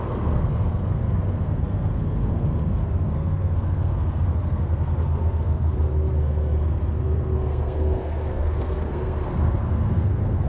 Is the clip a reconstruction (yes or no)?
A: yes